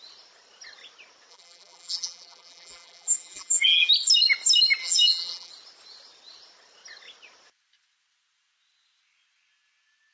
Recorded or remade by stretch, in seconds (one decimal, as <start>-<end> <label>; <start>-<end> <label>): 0.0-1.3 recorded; 1.3-3.9 remade; 3.9-4.8 recorded; 4.8-5.5 remade; 5.5-10.1 recorded